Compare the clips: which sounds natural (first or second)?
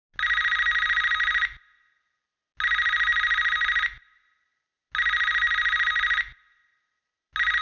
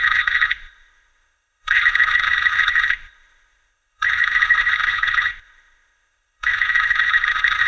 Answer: first